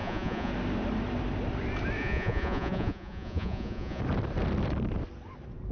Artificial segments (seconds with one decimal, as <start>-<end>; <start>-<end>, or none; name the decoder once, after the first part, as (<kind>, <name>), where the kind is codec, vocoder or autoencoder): 0.0-0.5 (vocoder, Vocos); 2.0-4.0